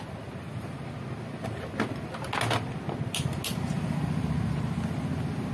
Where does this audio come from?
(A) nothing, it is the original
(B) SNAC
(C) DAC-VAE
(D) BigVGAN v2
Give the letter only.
A